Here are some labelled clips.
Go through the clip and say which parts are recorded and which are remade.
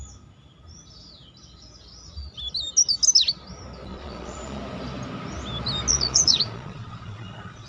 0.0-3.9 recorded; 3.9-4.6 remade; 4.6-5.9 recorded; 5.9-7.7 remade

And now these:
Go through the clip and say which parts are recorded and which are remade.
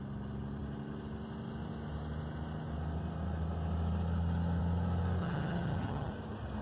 0.0-5.2 recorded; 5.2-6.1 remade; 6.1-6.6 recorded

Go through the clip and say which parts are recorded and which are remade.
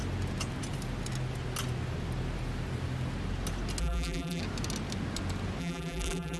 0.0-3.8 recorded; 3.8-4.4 remade; 4.4-5.6 recorded; 5.6-6.4 remade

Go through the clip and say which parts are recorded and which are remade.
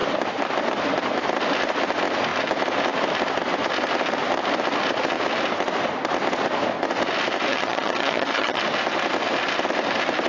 0.0-7.5 recorded; 7.5-8.6 remade; 8.6-10.3 recorded